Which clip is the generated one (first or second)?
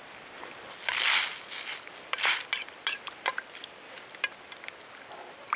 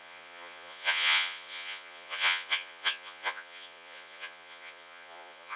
second